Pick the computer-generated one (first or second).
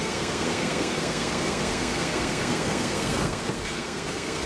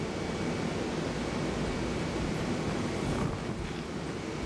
first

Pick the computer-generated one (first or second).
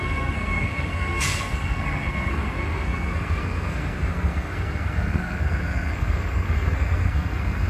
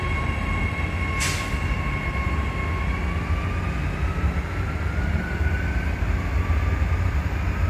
first